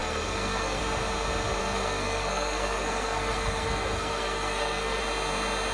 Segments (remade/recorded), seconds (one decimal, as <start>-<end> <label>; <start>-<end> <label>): 0.0-0.8 remade; 0.8-1.6 recorded; 1.6-5.0 remade; 5.0-5.7 recorded